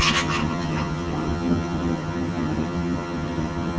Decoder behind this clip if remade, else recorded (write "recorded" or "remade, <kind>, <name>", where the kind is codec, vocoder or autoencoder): remade, vocoder, HiFi-GAN